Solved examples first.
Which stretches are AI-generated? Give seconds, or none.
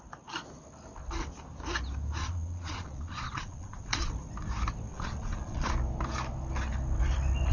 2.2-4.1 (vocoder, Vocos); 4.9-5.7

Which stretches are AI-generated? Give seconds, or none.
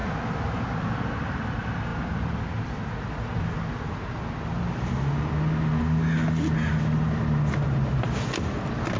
none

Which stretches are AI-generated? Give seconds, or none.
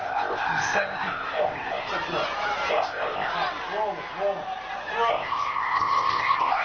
0.0-1.9 (codec, ZipCodec); 2.7-3.3; 5.1-6.6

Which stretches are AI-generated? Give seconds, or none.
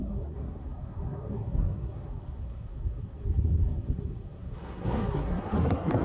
0.0-6.0 (codec, SNAC)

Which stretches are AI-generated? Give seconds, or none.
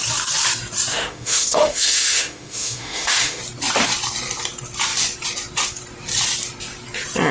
0.9-3.4 (autoencoder, DAC-VAE)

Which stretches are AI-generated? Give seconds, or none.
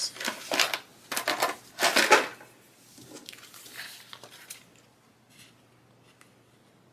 none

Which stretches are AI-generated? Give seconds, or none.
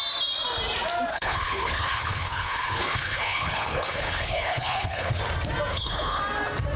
1.1-5.2 (codec, HILCodec); 5.7-6.2